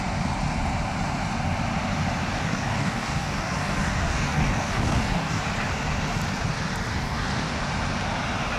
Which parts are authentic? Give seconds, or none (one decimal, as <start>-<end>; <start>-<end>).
0.0-2.2; 5.4-6.9; 7.6-8.6